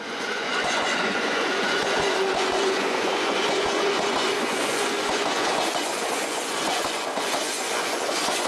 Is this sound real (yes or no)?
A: no